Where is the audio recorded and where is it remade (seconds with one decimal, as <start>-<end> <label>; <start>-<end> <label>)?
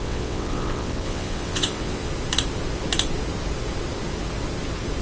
0.0-2.1 remade; 2.1-5.0 recorded